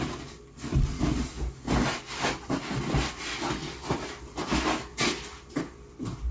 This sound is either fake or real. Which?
real